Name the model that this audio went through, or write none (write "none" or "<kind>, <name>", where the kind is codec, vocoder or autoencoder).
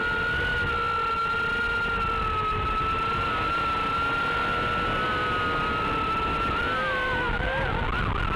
none